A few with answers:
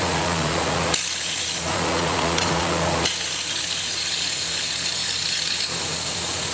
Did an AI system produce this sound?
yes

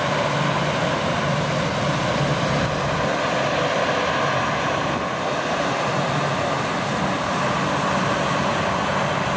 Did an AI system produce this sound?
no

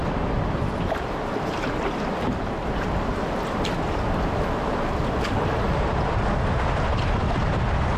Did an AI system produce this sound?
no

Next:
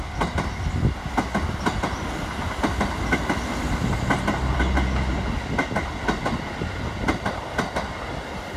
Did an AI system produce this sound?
no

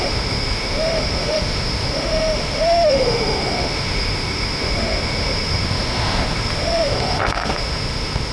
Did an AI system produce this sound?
yes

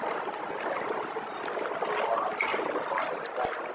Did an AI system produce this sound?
no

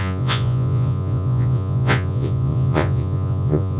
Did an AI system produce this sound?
yes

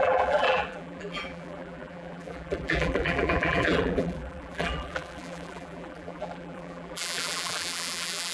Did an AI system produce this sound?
yes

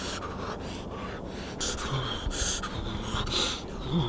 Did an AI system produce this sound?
no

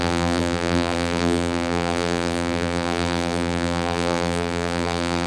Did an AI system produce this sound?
yes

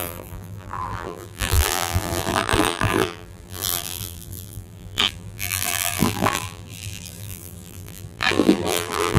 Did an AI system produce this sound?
yes